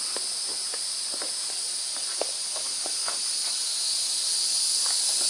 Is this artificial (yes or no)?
no